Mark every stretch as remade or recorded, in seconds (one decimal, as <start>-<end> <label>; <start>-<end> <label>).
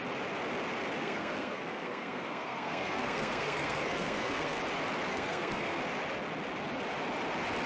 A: 0.0-1.0 recorded; 1.0-4.6 remade; 4.6-5.1 recorded; 5.1-5.8 remade; 5.8-7.7 recorded